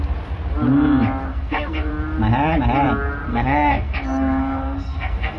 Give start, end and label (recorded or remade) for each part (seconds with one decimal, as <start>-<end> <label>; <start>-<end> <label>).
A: 0.0-1.3 recorded; 1.3-1.9 remade; 1.9-3.3 recorded; 3.3-5.4 remade